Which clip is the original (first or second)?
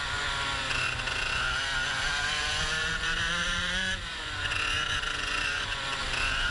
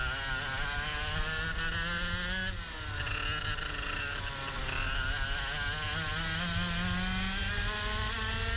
second